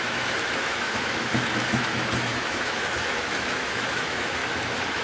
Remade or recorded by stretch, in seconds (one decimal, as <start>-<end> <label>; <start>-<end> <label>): 0.0-4.4 remade; 4.4-5.0 recorded